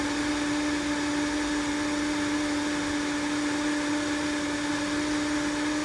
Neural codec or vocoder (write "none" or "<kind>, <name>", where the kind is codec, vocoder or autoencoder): none